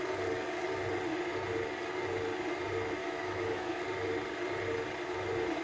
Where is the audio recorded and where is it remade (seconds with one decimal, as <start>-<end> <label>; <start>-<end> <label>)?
0.0-3.0 recorded; 3.0-3.8 remade; 3.8-5.6 recorded